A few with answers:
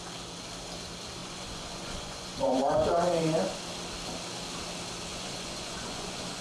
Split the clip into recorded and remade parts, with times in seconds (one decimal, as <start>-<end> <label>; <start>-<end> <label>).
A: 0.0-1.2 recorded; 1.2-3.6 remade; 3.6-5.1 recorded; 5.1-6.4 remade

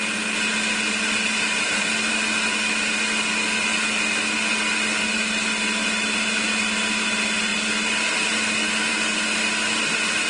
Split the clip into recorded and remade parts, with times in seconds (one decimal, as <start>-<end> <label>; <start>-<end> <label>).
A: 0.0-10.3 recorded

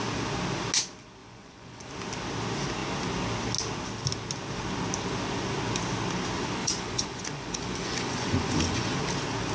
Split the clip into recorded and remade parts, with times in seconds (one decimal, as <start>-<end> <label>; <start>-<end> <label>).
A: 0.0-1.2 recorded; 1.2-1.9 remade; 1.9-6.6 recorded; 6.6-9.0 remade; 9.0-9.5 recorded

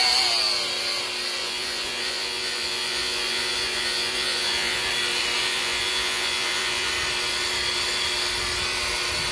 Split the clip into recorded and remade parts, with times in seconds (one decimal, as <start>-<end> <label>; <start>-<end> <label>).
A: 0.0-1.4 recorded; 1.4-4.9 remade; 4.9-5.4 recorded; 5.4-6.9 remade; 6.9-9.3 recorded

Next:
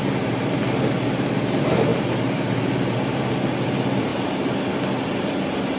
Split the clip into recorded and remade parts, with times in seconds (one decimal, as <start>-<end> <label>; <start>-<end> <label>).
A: 0.0-5.8 recorded

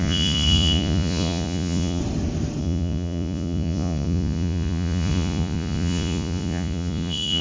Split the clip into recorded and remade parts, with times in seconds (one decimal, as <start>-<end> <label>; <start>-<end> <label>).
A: 0.0-2.0 remade; 2.0-2.6 recorded; 2.6-7.4 remade

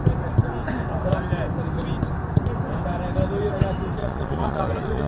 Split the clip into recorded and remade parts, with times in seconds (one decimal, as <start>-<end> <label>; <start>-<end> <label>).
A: 0.0-4.0 recorded; 4.0-5.1 remade

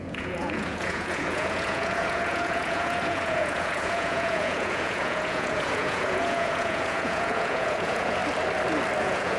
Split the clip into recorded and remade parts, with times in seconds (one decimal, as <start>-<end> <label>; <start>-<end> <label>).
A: 0.0-8.2 remade; 8.2-9.0 recorded; 9.0-9.4 remade